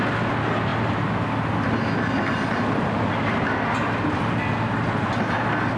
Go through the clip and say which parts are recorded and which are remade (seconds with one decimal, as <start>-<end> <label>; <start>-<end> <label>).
0.0-5.8 recorded